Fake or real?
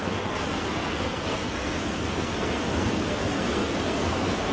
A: fake